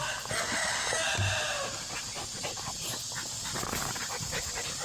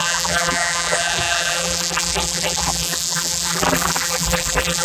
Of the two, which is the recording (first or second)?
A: first